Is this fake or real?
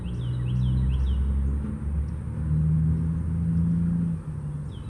real